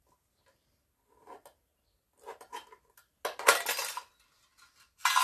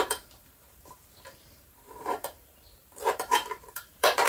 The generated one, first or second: second